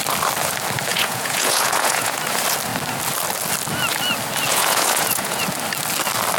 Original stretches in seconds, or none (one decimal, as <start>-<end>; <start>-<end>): 0.0-0.9; 2.2-4.5; 5.4-6.4